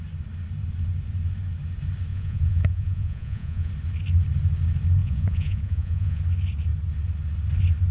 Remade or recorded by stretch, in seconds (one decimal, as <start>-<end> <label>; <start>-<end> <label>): 0.0-2.1 recorded; 2.1-3.7 remade; 3.7-5.0 recorded; 5.0-6.2 remade; 6.2-7.9 recorded